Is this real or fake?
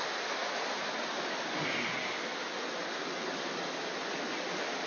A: real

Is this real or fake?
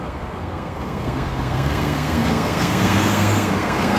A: fake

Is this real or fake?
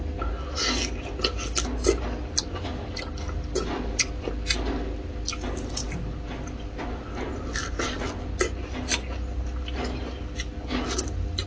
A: real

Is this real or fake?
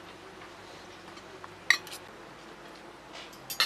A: real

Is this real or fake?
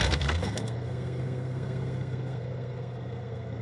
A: fake